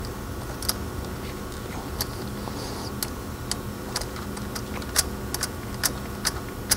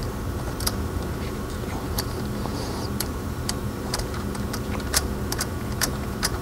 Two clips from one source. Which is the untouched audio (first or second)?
first